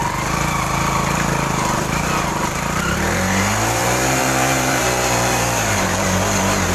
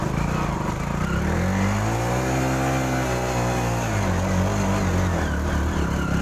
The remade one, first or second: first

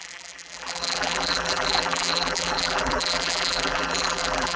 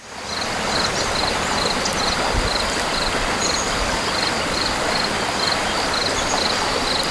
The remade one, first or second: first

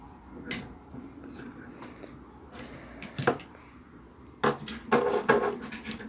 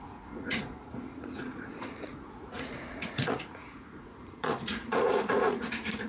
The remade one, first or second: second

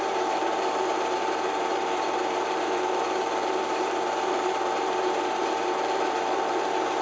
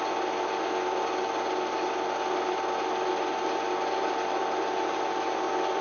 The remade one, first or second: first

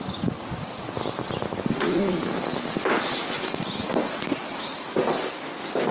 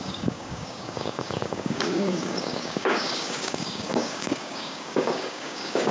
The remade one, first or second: second